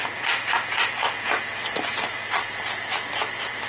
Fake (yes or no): no